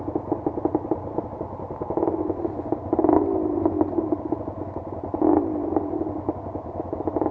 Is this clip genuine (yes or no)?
yes